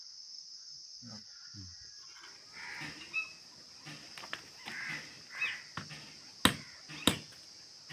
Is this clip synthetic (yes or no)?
no